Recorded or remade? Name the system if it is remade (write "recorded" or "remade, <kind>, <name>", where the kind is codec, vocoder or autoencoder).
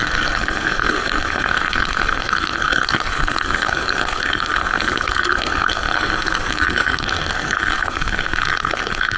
remade, codec, SNAC